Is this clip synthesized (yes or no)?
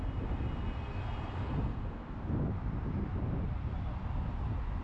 no